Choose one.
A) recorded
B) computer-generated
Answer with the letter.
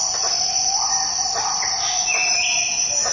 A